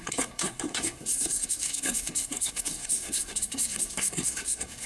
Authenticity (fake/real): fake